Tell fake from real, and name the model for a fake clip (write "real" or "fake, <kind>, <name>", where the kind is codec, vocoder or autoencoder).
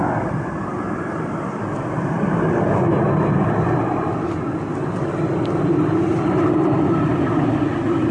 real